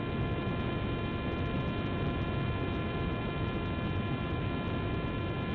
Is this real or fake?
real